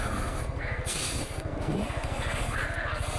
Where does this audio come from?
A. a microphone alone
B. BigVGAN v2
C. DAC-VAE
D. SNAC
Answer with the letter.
D